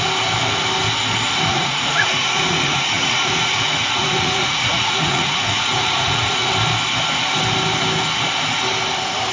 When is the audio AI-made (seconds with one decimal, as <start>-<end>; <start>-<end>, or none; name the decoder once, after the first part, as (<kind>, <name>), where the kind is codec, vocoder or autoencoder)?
1.5-6.5 (vocoder, Vocos)